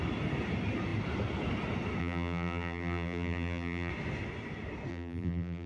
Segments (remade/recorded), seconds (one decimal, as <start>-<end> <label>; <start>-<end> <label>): 0.0-2.0 recorded; 2.0-3.9 remade; 3.9-4.9 recorded; 4.9-5.7 remade